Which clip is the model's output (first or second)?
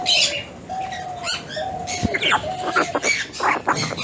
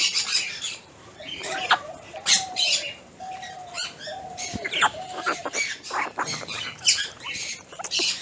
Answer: second